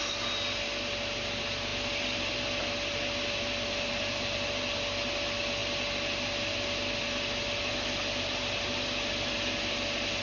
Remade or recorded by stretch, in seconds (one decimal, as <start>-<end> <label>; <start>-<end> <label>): 0.0-10.2 recorded